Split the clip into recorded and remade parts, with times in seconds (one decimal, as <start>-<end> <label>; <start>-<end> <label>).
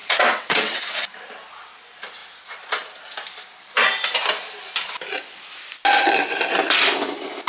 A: 0.0-0.8 remade; 0.8-7.5 recorded